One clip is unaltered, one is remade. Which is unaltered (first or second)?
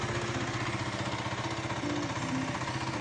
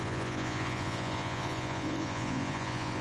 first